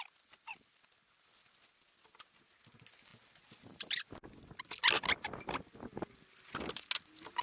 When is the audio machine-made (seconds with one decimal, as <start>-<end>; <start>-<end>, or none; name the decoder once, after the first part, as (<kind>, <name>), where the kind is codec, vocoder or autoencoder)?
none